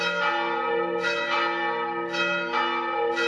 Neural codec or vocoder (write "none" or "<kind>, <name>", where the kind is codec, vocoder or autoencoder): none